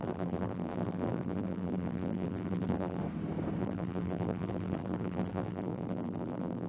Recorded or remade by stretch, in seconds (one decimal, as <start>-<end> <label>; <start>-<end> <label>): 0.0-3.0 remade; 3.0-3.6 recorded; 3.6-6.7 remade